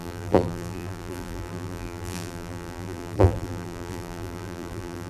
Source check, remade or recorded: remade